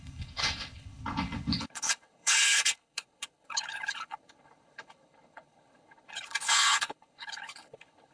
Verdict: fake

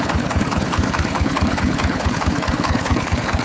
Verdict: fake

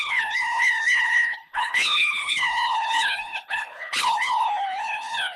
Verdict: fake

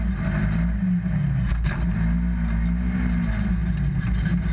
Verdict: real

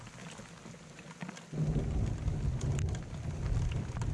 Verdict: real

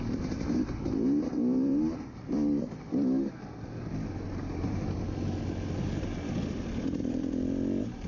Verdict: real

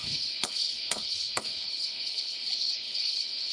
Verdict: fake